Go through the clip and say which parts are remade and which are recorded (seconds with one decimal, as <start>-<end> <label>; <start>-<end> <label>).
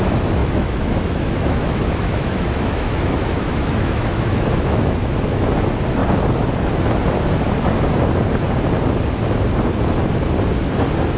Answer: 0.0-0.4 recorded; 0.4-5.5 remade; 5.5-11.2 recorded